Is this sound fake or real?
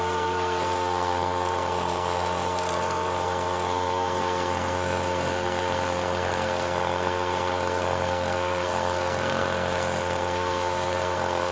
fake